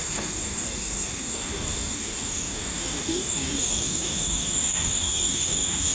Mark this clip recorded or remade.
remade